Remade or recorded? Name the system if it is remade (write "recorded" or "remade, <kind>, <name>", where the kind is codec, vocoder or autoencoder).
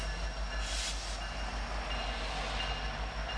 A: recorded